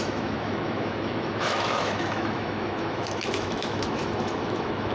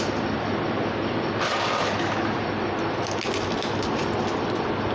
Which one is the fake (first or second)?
first